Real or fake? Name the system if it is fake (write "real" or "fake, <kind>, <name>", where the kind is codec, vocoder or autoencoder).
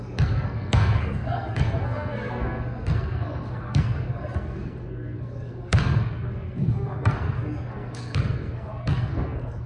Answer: fake, codec, SNAC